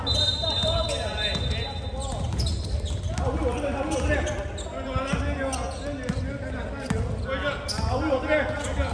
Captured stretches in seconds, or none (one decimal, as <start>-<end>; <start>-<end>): 0.0-8.9